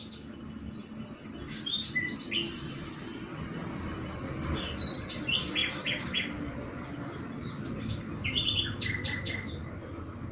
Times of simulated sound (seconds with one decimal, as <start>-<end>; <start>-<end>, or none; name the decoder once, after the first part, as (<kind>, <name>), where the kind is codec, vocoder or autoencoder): none